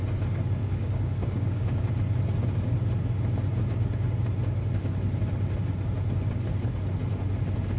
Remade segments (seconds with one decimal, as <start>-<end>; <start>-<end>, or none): 0.6-1.9